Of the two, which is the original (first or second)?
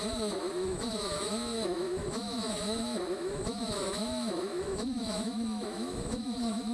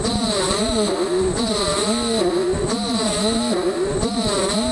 second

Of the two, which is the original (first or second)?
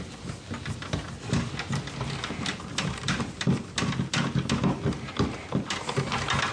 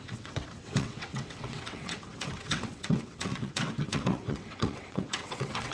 first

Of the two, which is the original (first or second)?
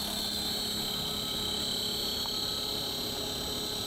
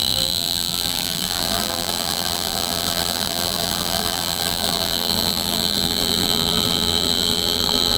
first